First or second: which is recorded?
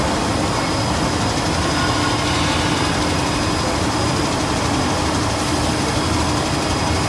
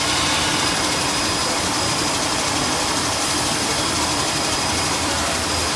first